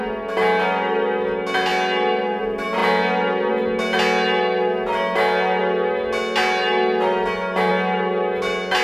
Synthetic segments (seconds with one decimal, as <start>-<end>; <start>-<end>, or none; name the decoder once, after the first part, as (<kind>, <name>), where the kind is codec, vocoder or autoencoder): none